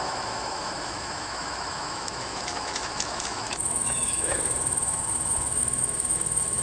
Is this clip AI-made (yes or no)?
yes